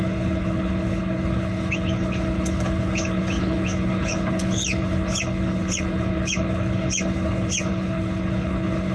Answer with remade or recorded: remade